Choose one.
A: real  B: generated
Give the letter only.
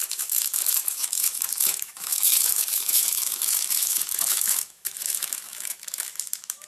B